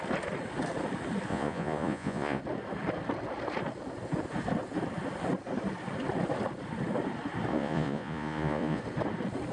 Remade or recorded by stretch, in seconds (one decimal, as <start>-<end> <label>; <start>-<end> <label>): 0.0-1.3 recorded; 1.3-2.4 remade; 2.4-7.5 recorded; 7.5-8.8 remade; 8.8-9.5 recorded